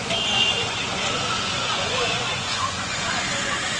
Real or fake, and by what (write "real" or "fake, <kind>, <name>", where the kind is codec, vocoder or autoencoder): fake, vocoder, Vocos